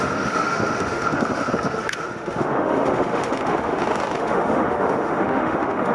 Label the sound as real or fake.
fake